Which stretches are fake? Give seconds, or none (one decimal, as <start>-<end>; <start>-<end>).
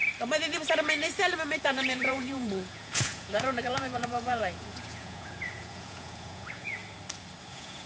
1.6-6.8; 7.5-7.9